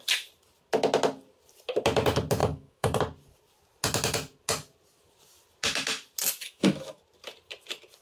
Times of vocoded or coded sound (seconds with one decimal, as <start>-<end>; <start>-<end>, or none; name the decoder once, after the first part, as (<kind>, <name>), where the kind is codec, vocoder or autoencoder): 2.4-3.0 (autoencoder, DAC-VAE); 6.4-7.0